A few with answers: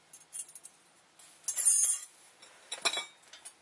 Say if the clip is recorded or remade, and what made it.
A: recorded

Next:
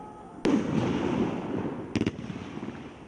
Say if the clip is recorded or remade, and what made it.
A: recorded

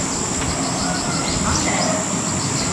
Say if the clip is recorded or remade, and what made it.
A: recorded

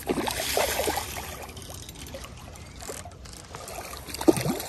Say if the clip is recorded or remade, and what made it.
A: recorded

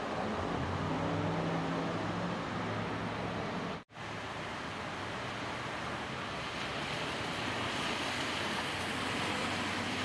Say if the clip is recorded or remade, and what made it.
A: recorded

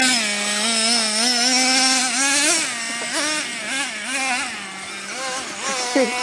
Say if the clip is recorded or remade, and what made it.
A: recorded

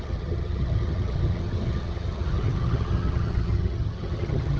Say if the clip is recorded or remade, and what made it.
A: remade, vocoder, HiFi-GAN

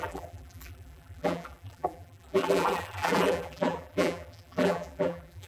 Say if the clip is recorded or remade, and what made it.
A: remade, vocoder, BigVGAN v2